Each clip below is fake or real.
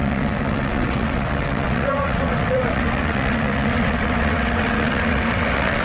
fake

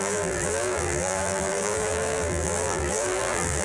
fake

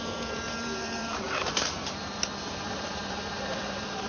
fake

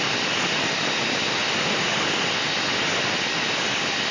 real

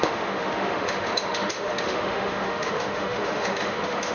fake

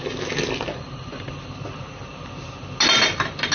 real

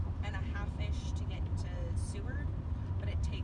real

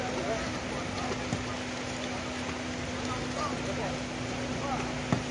real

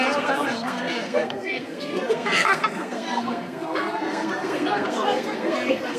fake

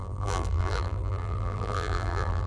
fake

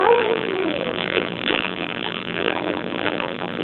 fake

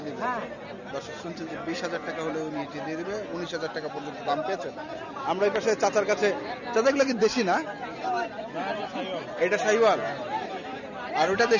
real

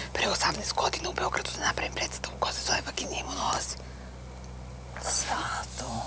real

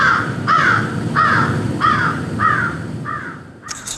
fake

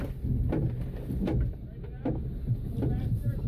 real